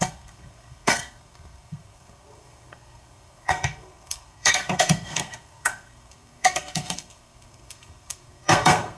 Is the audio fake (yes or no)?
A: yes